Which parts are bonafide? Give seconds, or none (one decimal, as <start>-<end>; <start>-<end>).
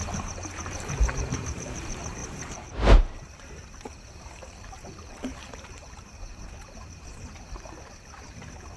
none